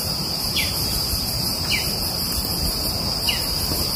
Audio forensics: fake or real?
fake